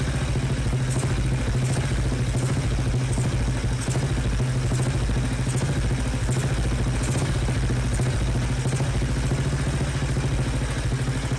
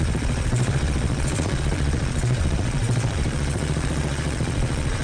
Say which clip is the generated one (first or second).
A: second